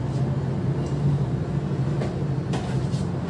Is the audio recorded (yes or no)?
yes